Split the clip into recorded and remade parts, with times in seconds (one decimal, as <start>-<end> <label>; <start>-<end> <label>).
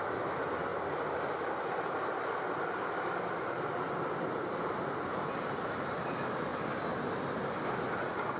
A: 0.0-8.4 recorded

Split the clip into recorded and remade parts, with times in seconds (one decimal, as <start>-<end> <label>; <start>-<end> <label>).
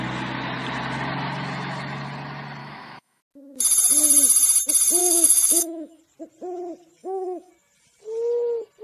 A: 0.0-2.6 recorded; 2.6-3.2 remade; 3.2-5.0 recorded; 5.0-6.0 remade; 6.0-7.0 recorded; 7.0-7.5 remade; 7.5-8.8 recorded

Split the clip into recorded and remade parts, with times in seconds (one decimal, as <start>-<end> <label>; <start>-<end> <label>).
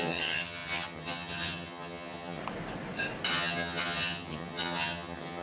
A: 0.0-2.4 remade; 2.4-3.3 recorded; 3.3-5.4 remade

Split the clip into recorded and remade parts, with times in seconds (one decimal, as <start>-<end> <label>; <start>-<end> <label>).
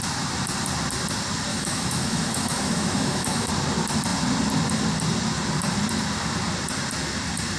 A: 0.0-1.5 recorded; 1.5-3.5 remade; 3.5-7.6 recorded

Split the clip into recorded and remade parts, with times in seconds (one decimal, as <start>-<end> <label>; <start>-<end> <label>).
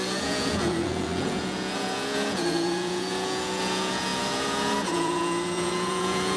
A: 0.0-6.4 remade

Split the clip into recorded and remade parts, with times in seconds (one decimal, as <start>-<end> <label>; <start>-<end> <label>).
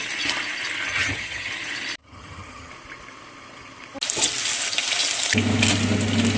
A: 0.0-0.9 recorded; 0.9-1.5 remade; 1.5-2.0 recorded; 2.0-2.7 remade; 2.7-6.4 recorded